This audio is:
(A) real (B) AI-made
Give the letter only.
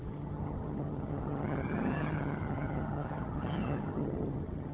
B